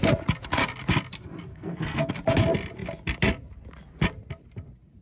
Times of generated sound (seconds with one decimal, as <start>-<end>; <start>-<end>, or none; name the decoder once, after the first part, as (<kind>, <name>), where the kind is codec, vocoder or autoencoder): 1.5-2.1 (codec, SNAC)